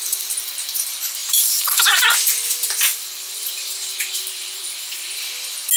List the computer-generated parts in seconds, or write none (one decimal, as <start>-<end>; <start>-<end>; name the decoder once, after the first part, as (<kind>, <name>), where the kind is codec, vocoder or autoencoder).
1.2-2.0 (vocoder, BigVGAN v2); 2.9-5.2